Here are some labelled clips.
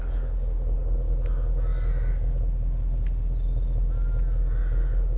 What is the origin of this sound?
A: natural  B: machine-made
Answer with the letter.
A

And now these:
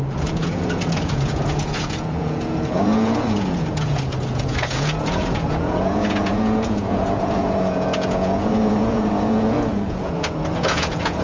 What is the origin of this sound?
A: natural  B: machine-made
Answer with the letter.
B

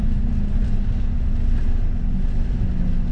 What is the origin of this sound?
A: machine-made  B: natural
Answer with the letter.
B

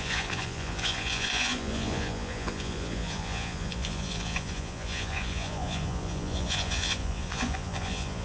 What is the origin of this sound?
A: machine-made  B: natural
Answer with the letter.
A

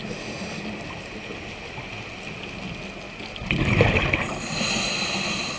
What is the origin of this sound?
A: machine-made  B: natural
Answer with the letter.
B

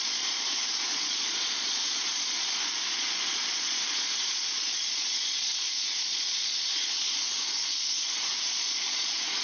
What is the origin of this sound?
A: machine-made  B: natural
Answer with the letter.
A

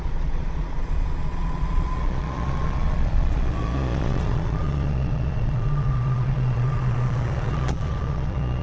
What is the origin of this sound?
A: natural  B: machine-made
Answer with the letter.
B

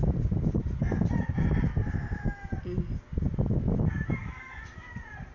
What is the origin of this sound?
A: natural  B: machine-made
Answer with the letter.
A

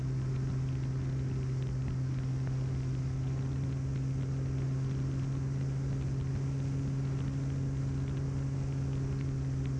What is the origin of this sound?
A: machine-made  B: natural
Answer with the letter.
B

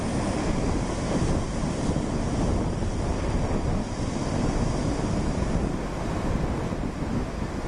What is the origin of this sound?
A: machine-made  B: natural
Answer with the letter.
B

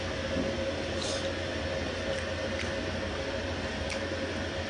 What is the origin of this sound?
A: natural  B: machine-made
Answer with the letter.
A